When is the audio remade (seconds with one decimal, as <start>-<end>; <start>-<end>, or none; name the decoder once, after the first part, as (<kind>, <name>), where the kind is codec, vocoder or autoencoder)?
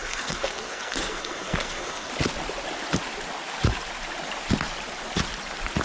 0.0-2.1 (codec, SNAC)